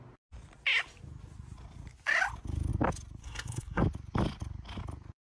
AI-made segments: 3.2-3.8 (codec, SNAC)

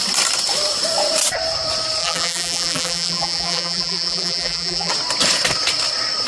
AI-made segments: 2.0-4.9 (vocoder, BigVGAN v2)